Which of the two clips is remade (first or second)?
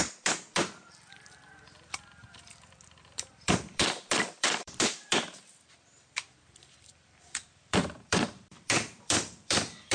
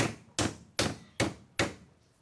first